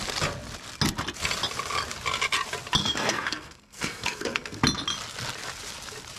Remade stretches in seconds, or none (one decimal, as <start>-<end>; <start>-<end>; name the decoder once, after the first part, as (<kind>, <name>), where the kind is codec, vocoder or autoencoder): 2.8-4.6 (codec, SNAC)